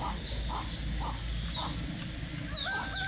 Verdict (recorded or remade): recorded